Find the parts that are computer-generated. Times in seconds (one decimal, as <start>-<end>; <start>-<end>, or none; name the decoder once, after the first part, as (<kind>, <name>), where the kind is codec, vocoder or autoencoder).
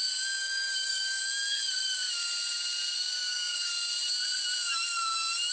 0.4-1.2 (codec, DAC); 3.1-3.7